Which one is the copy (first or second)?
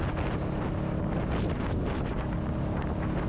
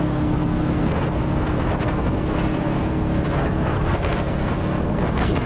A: second